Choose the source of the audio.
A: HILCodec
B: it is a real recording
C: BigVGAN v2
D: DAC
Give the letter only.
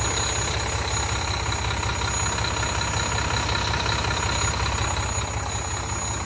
B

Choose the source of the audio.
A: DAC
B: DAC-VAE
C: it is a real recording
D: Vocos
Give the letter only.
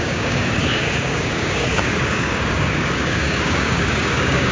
A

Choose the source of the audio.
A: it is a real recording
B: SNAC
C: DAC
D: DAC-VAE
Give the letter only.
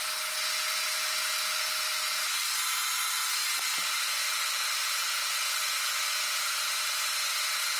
A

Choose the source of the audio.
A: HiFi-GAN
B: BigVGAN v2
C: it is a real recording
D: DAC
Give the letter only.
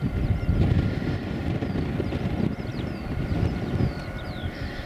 C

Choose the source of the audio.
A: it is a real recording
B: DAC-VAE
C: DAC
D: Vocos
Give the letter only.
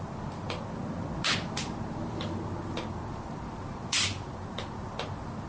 A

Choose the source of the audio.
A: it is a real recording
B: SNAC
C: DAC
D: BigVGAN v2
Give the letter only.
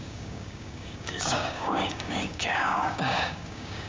C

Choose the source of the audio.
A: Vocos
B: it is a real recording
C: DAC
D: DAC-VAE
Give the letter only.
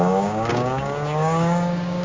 C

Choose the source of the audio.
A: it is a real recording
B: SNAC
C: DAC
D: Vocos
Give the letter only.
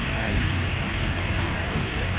C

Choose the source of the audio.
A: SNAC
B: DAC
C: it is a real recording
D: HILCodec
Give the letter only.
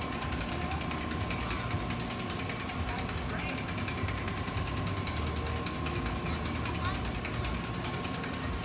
C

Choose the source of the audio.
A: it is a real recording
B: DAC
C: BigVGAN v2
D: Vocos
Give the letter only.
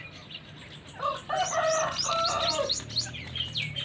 A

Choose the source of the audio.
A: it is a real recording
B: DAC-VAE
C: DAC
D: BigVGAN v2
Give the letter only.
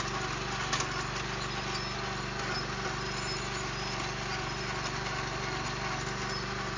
A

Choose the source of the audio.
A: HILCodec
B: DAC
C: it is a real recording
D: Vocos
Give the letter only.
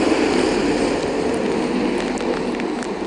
C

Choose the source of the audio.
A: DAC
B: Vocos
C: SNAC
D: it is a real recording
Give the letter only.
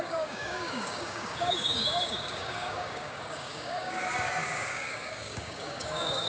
A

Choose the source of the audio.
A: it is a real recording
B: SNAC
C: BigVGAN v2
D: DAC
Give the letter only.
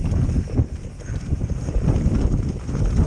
A